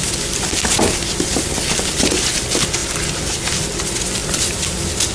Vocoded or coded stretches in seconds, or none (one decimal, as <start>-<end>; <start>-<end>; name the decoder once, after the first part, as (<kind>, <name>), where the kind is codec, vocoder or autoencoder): none